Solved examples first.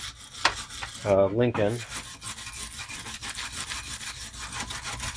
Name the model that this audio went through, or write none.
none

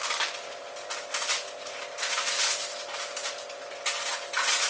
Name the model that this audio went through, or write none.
none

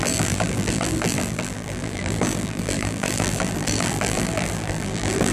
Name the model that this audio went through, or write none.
vocoder, BigVGAN v2